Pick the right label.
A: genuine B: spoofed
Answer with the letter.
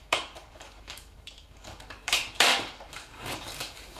B